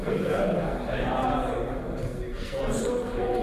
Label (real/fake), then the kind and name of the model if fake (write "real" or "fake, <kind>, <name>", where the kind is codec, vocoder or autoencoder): fake, codec, SNAC